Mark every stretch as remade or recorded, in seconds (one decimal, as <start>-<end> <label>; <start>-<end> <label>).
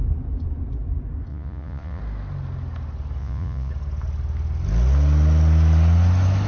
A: 0.0-1.3 recorded; 1.3-2.0 remade; 2.0-3.2 recorded; 3.2-3.7 remade; 3.7-6.5 recorded